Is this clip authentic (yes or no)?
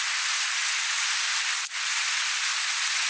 yes